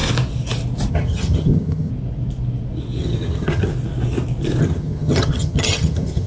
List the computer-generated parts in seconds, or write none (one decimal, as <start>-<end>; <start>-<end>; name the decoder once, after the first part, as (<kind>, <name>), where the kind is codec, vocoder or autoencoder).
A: 0.9-1.9 (vocoder, HiFi-GAN); 3.0-3.7; 4.6-6.3